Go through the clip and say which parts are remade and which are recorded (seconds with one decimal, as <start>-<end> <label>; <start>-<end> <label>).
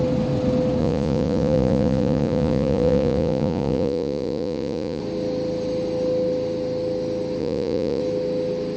0.0-0.8 recorded; 0.8-5.0 remade; 5.0-7.4 recorded; 7.4-8.0 remade; 8.0-8.8 recorded